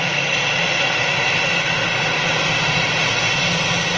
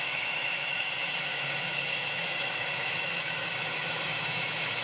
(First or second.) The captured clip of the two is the first